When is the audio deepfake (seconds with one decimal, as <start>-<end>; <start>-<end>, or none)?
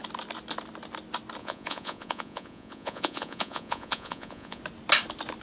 1.4-4.6